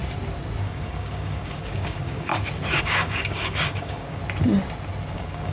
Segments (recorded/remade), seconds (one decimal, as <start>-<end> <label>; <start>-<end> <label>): 0.0-0.6 recorded; 0.6-2.3 remade; 2.3-2.8 recorded; 2.8-4.2 remade; 4.2-5.1 recorded; 5.1-5.5 remade